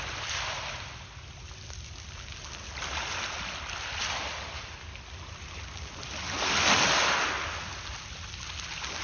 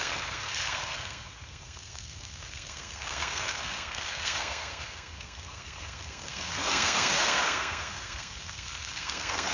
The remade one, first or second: second